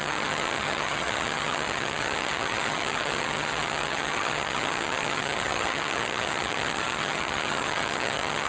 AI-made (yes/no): yes